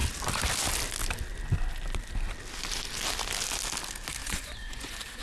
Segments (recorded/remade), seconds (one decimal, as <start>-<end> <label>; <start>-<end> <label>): 0.0-4.2 recorded; 4.2-5.2 remade